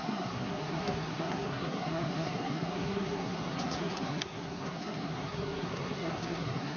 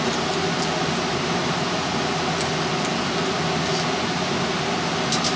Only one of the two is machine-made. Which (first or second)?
first